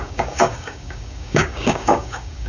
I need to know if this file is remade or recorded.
remade